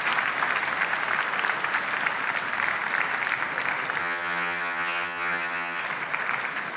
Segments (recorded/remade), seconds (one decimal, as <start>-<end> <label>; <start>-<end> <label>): 0.0-4.0 recorded; 4.0-5.8 remade; 5.8-6.8 recorded

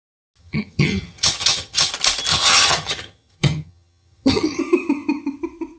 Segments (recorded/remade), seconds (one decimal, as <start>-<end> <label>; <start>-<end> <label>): 0.0-0.4 recorded; 0.4-1.9 remade; 1.9-2.3 recorded; 2.3-4.6 remade; 4.6-5.8 recorded

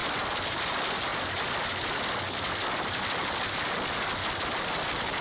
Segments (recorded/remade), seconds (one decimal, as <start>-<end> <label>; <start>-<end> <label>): 0.0-5.2 recorded

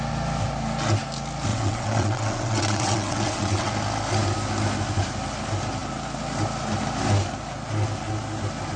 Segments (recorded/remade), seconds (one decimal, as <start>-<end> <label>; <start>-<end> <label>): 0.0-1.5 recorded; 1.5-3.7 remade; 3.7-8.8 recorded

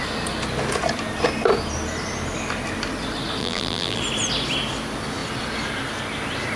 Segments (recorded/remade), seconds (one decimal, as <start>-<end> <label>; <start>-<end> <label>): 0.0-3.4 recorded; 3.4-4.0 remade; 4.0-6.6 recorded

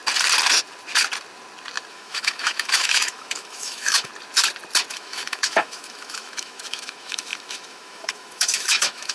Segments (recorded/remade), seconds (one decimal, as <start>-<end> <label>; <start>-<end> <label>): 0.0-1.9 recorded; 1.9-4.1 remade; 4.1-4.9 recorded; 4.9-9.1 remade

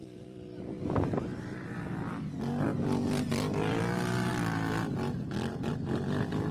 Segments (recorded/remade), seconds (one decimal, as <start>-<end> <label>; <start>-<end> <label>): 0.0-4.3 remade; 4.3-5.7 recorded; 5.7-6.5 remade